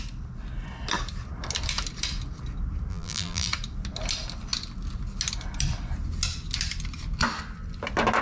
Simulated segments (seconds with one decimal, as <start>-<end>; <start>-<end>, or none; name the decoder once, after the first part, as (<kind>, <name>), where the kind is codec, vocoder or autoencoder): 2.9-3.5 (vocoder, BigVGAN v2)